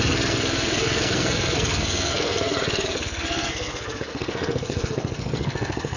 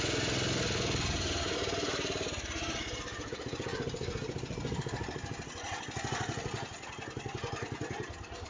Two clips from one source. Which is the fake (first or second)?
first